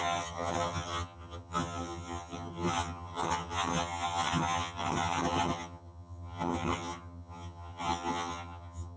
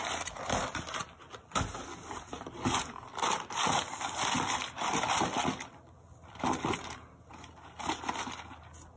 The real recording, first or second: second